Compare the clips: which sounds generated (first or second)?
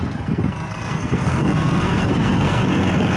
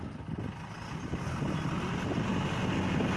first